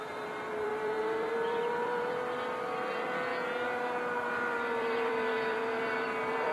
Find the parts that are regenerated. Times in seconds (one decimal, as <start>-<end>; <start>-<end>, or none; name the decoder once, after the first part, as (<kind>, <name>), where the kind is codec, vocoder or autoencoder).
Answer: 0.0-3.3 (vocoder, BigVGAN v2); 4.3-6.5